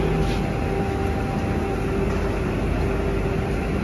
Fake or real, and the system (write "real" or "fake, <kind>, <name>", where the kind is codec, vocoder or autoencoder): real